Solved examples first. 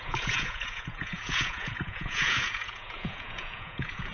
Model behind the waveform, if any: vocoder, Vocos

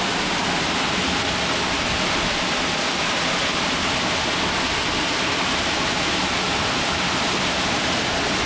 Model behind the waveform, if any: none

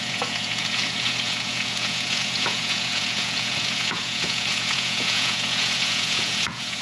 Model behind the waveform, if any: vocoder, Vocos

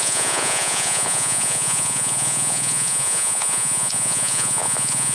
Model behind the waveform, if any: vocoder, Vocos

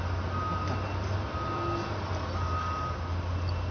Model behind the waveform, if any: none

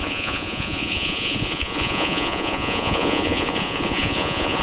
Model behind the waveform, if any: vocoder, Vocos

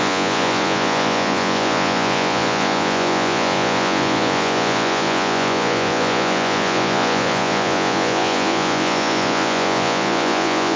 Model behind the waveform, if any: vocoder, Vocos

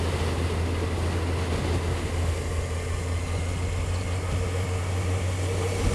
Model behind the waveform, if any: none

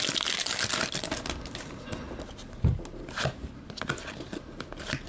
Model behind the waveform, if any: none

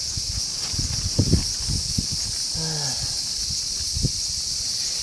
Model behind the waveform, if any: none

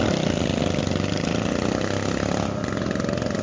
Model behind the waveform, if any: none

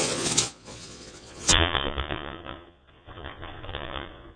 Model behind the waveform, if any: vocoder, Vocos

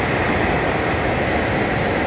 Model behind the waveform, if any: none